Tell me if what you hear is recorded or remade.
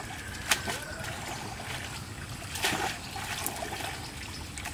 recorded